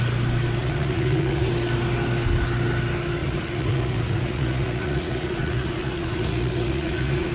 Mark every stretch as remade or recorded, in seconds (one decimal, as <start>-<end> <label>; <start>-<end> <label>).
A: 0.0-0.6 recorded; 0.6-1.5 remade; 1.5-3.2 recorded; 3.2-7.3 remade

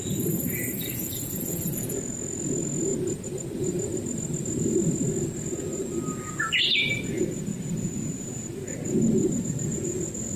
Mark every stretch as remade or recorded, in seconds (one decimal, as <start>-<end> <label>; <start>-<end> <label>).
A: 0.0-10.4 recorded